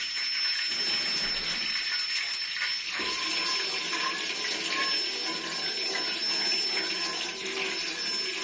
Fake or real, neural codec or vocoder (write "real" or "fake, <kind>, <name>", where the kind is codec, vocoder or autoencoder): real